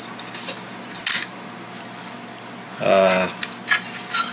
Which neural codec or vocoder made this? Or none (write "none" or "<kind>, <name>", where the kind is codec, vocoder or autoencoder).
none